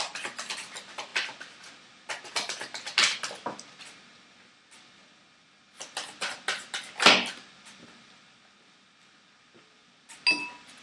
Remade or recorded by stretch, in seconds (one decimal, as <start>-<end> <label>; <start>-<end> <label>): 0.0-10.8 recorded

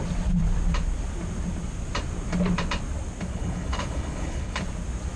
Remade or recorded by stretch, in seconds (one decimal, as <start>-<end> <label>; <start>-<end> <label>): 0.0-3.3 recorded; 3.3-4.6 remade; 4.6-5.2 recorded

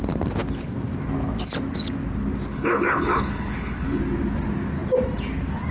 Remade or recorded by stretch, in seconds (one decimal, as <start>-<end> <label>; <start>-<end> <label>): 0.0-2.5 recorded; 2.5-4.0 remade; 4.0-5.7 recorded

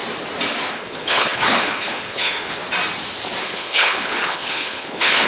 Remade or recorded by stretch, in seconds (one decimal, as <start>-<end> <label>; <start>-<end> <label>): 0.0-0.7 recorded; 0.7-2.6 remade; 2.6-3.4 recorded; 3.4-5.3 remade

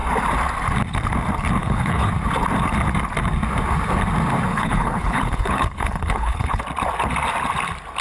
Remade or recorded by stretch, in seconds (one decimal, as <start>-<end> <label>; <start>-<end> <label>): 0.0-1.6 recorded; 1.6-2.1 remade; 2.1-4.5 recorded; 4.5-6.6 remade; 6.6-8.0 recorded